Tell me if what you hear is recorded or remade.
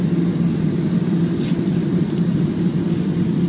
recorded